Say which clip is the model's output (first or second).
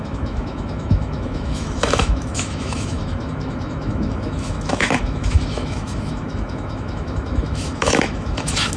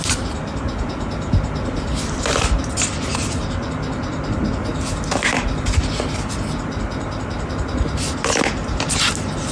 first